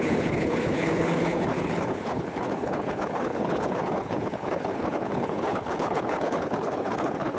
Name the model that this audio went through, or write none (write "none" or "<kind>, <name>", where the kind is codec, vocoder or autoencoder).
codec, HILCodec